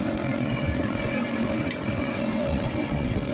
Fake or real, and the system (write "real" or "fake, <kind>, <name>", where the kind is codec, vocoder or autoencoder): fake, vocoder, WaveNeXt